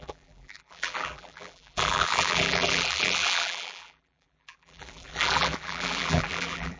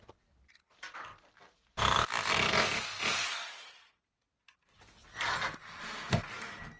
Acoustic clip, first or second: second